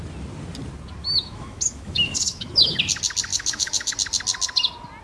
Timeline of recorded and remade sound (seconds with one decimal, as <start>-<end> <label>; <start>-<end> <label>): 0.0-1.0 recorded; 1.0-2.8 remade; 2.8-3.3 recorded; 3.3-3.9 remade; 3.9-5.0 recorded